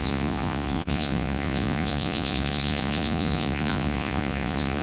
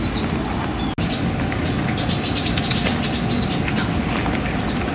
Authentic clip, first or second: second